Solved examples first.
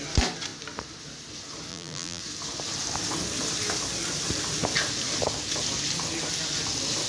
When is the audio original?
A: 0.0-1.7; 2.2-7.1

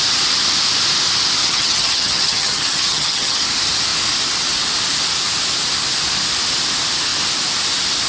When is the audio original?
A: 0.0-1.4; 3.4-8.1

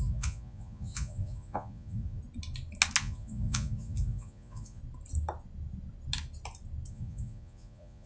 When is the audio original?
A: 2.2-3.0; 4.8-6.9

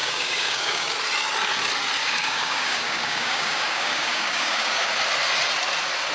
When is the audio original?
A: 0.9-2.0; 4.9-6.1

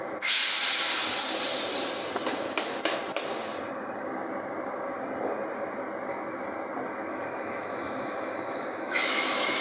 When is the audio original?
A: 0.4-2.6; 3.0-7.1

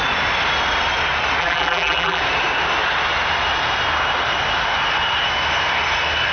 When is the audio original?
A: 0.0-1.4; 2.2-6.3

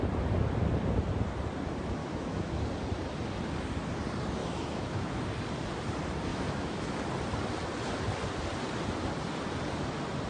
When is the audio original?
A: 0.0-2.0; 2.6-4.4; 5.2-6.3; 6.9-10.3